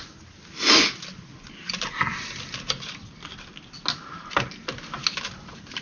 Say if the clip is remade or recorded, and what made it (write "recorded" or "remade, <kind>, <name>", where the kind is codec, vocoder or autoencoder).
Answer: recorded